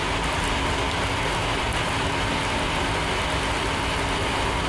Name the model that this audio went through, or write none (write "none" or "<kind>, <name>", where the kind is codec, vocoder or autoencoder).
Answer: none